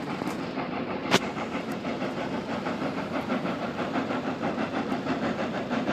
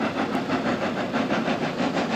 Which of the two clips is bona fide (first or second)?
second